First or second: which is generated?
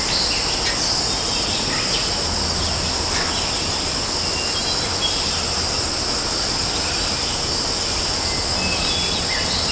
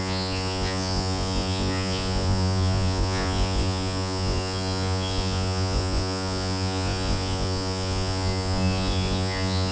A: second